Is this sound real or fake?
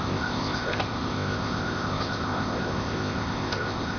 fake